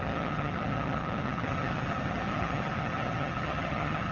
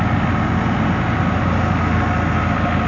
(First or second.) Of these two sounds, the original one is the second